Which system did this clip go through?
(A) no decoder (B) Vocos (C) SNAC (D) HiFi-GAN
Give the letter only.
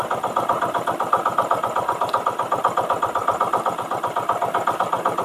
A